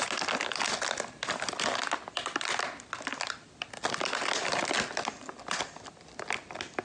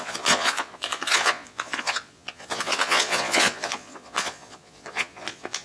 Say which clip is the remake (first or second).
second